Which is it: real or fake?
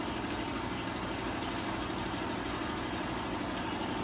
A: real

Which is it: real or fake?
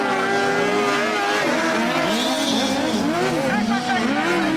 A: real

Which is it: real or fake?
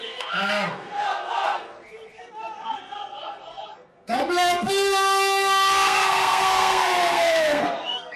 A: fake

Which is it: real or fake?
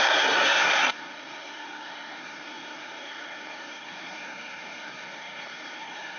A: fake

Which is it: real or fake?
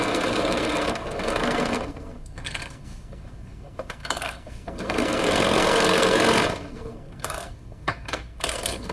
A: fake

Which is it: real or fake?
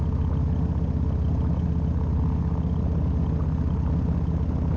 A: real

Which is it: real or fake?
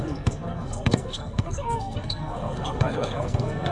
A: fake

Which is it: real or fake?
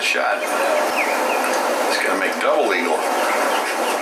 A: real